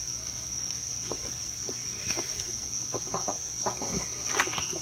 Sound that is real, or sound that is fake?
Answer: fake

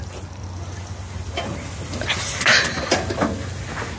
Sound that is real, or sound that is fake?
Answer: real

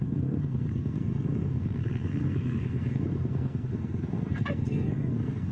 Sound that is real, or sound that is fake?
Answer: fake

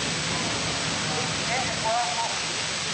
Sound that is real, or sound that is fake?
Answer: real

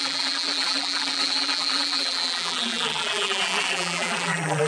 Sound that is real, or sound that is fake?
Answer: fake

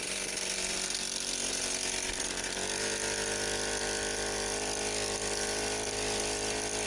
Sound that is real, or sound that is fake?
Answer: real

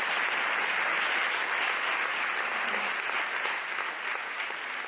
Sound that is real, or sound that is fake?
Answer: real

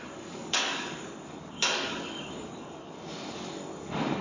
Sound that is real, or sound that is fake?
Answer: fake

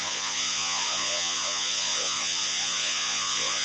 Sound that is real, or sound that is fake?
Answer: fake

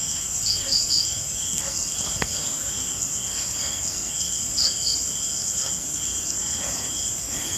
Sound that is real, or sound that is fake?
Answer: fake